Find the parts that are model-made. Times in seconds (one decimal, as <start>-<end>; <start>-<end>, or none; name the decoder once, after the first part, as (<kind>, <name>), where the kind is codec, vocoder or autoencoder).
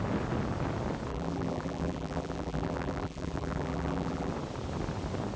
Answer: 1.1-4.3 (vocoder, BigVGAN v2)